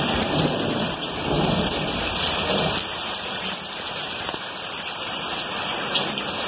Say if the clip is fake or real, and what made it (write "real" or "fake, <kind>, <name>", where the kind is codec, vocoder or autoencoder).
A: fake, vocoder, BigVGAN v2